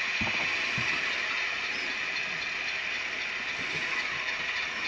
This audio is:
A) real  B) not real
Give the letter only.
A